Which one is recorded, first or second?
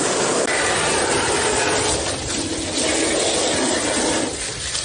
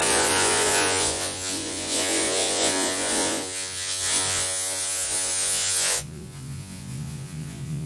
first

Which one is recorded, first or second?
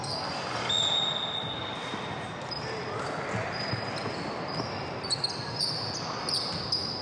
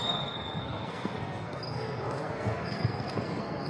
first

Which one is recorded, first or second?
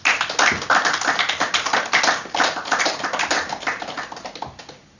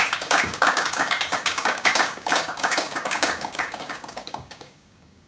first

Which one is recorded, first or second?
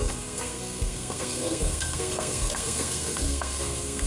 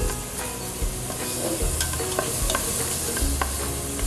second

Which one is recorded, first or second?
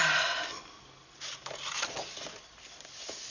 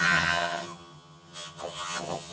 first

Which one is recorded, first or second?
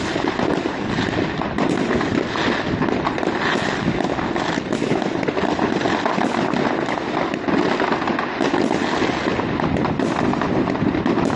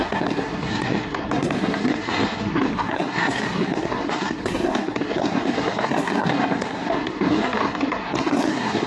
first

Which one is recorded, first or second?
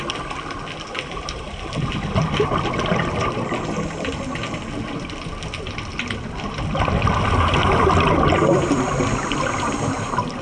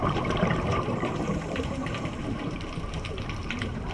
first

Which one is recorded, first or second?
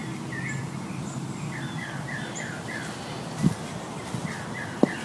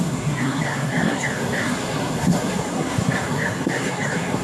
first